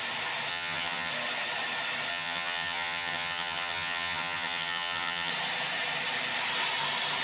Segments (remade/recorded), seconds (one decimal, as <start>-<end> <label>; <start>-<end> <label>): 0.0-0.5 recorded; 0.5-1.1 remade; 1.1-2.1 recorded; 2.1-5.3 remade; 5.3-7.2 recorded